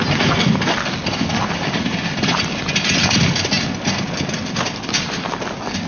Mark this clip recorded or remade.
recorded